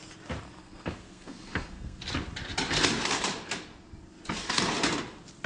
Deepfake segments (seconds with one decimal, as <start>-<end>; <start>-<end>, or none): 0.6-2.0